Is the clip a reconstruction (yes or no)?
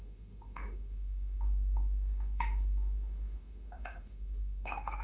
yes